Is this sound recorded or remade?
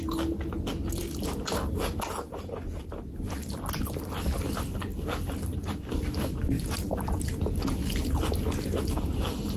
recorded